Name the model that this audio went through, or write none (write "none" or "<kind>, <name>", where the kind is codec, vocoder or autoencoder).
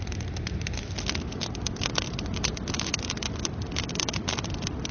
none